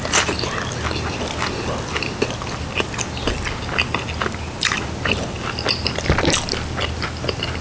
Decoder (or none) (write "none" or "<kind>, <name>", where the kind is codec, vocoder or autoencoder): none